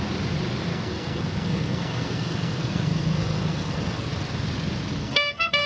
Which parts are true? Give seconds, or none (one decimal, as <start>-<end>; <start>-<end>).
0.0-0.7; 4.1-5.0